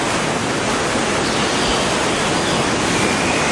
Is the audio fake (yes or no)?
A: no